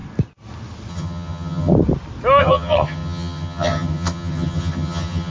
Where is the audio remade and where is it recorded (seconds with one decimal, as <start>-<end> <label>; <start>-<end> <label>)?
0.0-0.9 recorded; 0.9-1.7 remade; 1.7-2.4 recorded; 2.4-5.3 remade